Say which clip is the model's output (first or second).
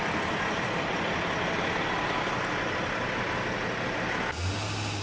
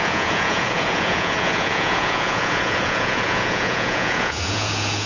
second